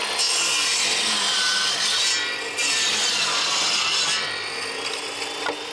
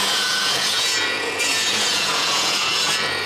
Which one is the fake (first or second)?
second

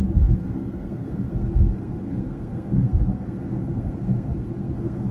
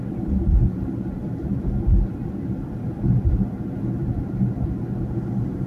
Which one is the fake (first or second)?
first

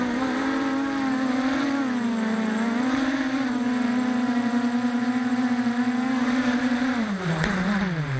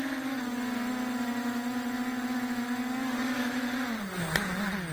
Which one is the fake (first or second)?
first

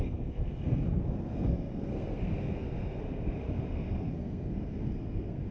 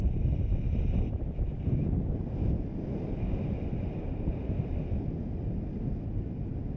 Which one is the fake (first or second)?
first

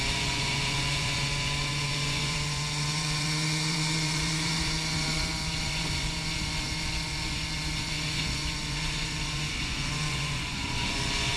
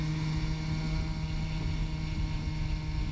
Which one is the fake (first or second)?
first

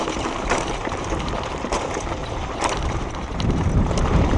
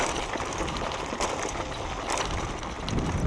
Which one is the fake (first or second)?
first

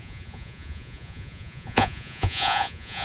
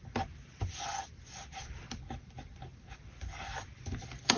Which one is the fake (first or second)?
first